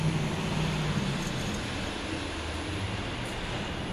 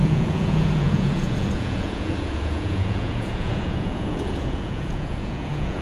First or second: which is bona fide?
first